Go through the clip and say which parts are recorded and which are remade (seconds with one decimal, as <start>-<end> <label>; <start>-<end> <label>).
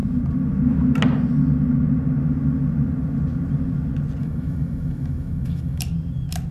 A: 0.0-4.2 recorded; 4.2-5.8 remade; 5.8-6.5 recorded